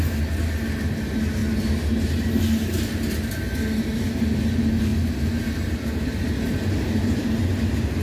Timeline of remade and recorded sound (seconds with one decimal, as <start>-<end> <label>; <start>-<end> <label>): 0.0-8.0 recorded